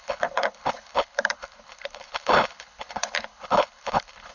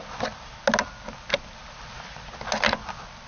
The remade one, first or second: first